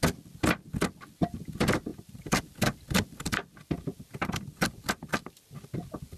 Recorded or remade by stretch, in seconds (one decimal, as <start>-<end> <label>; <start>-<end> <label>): 0.0-1.9 recorded; 1.9-2.4 remade; 2.4-3.9 recorded; 3.9-5.5 remade; 5.5-6.2 recorded